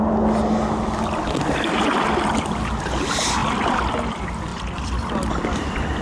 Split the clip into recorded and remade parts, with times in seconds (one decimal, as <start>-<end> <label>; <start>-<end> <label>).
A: 0.0-6.0 recorded